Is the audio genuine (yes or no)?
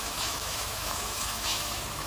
no